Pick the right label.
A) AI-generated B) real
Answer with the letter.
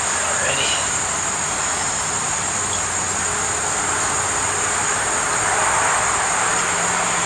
B